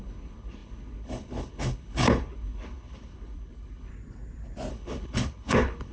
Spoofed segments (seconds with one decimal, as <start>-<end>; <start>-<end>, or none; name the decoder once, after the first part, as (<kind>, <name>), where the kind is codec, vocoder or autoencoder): 0.0-3.9 (codec, HILCodec); 4.7-5.9